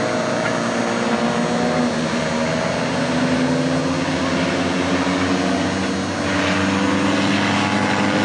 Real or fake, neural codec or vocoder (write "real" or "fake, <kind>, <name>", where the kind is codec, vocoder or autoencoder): real